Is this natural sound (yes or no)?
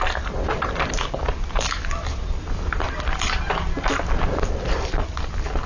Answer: yes